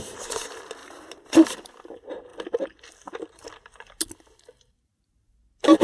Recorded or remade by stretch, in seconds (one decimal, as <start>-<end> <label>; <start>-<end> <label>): 0.0-0.8 recorded; 0.8-1.8 remade; 1.8-5.8 recorded